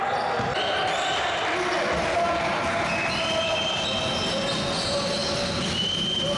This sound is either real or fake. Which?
real